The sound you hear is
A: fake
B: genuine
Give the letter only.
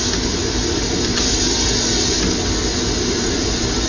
B